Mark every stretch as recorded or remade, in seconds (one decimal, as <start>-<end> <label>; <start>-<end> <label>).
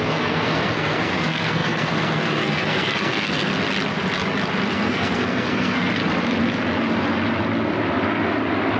0.0-3.5 remade; 3.5-4.7 recorded; 4.7-6.0 remade; 6.0-8.8 recorded